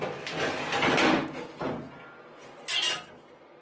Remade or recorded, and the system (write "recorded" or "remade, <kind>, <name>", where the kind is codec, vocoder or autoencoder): recorded